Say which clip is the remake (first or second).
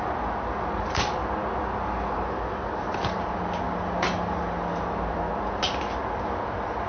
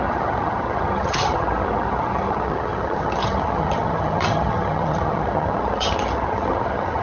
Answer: second